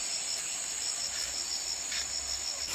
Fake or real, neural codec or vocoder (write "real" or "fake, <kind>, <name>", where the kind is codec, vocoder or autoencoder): real